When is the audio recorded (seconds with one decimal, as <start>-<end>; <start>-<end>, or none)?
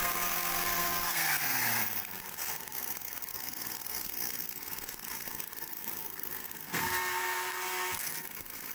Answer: none